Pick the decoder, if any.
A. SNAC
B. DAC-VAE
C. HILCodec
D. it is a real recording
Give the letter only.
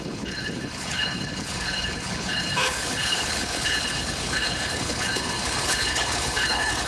C